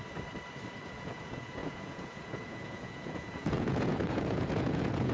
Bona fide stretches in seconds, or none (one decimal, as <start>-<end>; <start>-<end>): 0.0-0.8